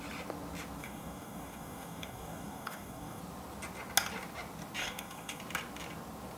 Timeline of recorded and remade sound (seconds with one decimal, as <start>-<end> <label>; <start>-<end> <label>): 0.0-0.8 recorded; 0.8-3.2 remade; 3.2-4.8 recorded; 4.8-5.4 remade; 5.4-6.4 recorded